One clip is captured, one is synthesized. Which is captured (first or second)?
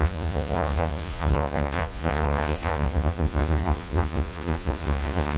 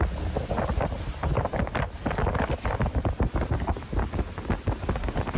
second